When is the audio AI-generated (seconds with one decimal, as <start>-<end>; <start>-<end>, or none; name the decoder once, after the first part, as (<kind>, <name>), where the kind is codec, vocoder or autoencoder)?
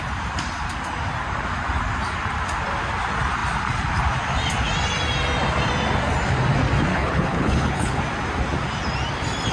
6.9-8.0 (codec, HILCodec)